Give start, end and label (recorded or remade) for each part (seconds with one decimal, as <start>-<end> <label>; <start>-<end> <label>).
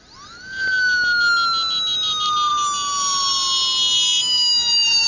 0.0-5.1 recorded